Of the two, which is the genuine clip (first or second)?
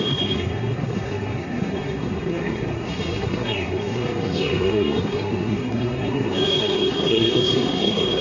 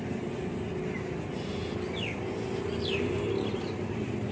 second